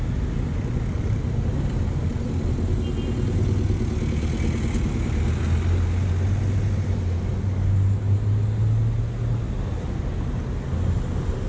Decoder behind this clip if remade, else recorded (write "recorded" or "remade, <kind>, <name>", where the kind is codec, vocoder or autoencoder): recorded